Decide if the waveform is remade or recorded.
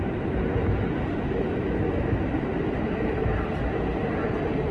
recorded